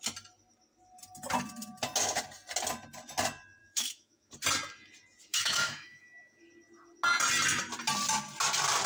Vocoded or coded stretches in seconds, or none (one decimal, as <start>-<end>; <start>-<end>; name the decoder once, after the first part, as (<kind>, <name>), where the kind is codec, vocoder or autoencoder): 3.6-4.3 (autoencoder, DAC-VAE); 5.3-6.4